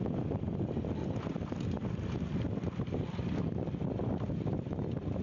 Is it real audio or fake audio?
real